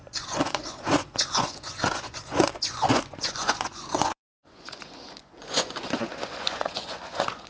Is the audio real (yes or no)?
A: no